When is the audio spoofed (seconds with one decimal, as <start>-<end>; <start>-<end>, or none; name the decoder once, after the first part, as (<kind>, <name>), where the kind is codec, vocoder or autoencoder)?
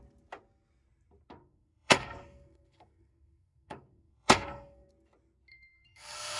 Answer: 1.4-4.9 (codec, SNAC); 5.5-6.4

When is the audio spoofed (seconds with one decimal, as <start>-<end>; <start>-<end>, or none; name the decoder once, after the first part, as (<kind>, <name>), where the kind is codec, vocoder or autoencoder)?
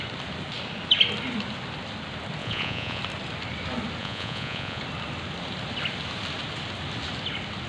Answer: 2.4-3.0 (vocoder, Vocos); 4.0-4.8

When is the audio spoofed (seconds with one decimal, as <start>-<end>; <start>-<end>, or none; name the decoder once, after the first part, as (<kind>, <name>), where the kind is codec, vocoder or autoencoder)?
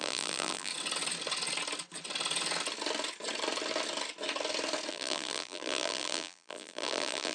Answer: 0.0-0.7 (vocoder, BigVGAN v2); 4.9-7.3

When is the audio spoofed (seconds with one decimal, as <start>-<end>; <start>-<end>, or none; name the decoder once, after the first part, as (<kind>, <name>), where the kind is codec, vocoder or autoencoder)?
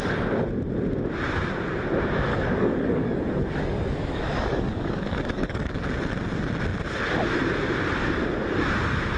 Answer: 2.3-5.8 (codec, DAC)